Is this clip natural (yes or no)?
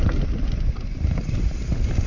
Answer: yes